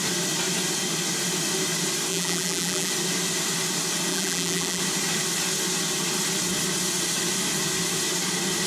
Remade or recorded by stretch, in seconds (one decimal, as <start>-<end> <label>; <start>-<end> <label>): 0.0-2.1 recorded; 2.1-2.9 remade; 2.9-4.1 recorded; 4.1-4.8 remade; 4.8-8.7 recorded